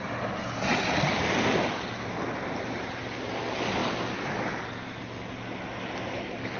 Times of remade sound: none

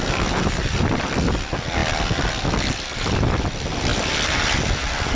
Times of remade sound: none

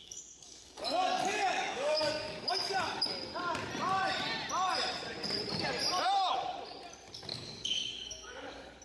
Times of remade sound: 0.0-3.0 (codec, DAC); 7.3-8.8

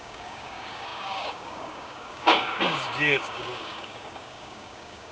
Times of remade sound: 0.0-5.1 (codec, DAC)

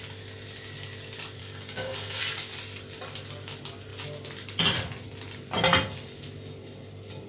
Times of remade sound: 1.4-2.2 (codec, DAC)

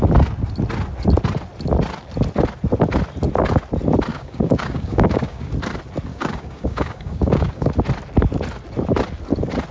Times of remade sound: 4.1-5.5 (codec, DAC); 6.1-7.7

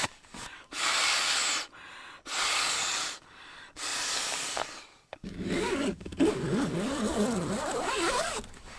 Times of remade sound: 0.0-1.4 (codec, DAC); 2.4-8.8

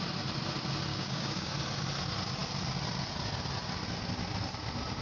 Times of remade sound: 0.9-1.5 (codec, DAC)